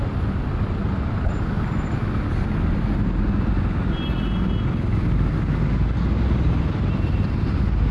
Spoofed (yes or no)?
no